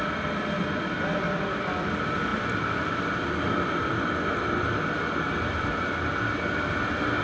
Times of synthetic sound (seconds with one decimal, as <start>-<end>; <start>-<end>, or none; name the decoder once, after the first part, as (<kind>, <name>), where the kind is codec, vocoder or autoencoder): 2.3-5.8 (vocoder, BigVGAN v2)